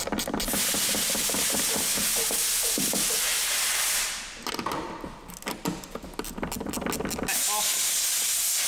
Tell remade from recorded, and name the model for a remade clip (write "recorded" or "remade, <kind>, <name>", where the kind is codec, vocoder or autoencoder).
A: recorded